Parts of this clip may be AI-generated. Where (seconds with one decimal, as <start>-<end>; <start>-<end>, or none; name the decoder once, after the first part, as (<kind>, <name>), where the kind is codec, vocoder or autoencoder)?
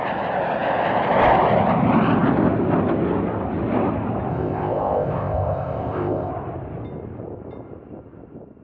4.3-6.3 (codec, ZipCodec)